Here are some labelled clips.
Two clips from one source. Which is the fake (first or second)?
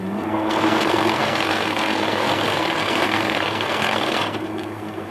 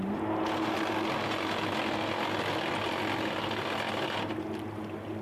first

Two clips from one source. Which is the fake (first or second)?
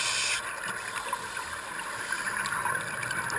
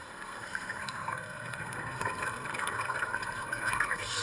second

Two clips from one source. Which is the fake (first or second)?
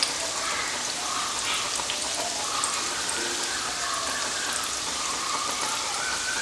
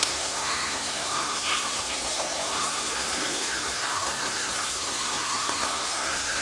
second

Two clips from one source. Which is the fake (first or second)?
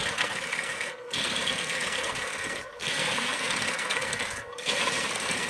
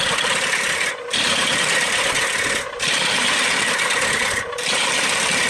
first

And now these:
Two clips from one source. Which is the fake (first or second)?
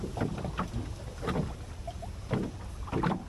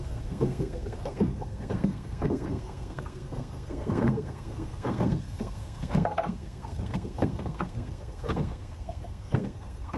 second